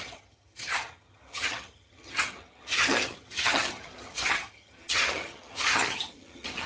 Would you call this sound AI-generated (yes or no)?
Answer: yes